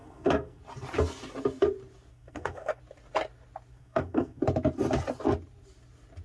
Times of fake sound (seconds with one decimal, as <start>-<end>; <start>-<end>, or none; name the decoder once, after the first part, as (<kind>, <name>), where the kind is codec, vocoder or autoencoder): 0.0-0.6 (codec, SNAC); 2.1-2.8; 3.7-4.4